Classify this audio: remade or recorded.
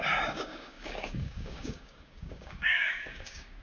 remade